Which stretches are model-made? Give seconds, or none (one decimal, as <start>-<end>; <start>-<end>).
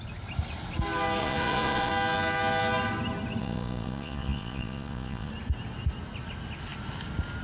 1.2-1.9; 3.4-5.3